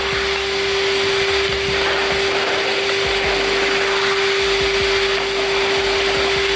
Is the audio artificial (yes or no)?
no